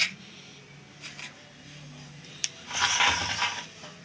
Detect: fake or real real